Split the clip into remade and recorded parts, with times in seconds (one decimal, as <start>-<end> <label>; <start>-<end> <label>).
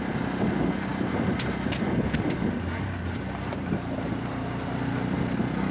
0.0-5.7 recorded